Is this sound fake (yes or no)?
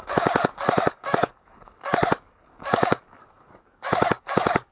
yes